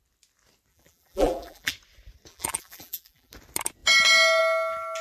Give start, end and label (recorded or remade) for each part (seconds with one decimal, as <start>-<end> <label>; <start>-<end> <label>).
0.0-0.7 recorded; 0.7-1.7 remade; 1.7-2.3 recorded; 2.3-3.3 remade; 3.3-5.0 recorded